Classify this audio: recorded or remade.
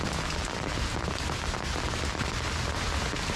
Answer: recorded